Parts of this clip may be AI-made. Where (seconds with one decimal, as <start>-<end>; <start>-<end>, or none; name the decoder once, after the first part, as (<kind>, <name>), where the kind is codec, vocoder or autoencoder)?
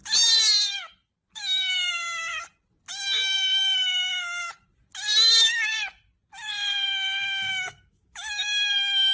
2.9-4.1 (autoencoder, DAC-VAE); 7.5-9.1